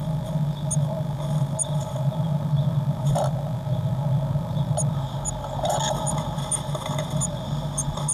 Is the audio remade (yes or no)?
no